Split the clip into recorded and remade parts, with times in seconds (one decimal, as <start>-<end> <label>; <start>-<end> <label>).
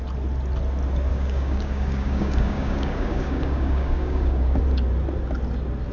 0.0-1.1 recorded; 1.1-4.6 remade; 4.6-5.9 recorded